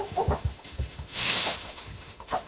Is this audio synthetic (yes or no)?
yes